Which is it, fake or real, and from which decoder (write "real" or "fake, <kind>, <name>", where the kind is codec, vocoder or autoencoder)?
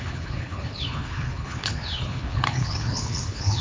fake, codec, HILCodec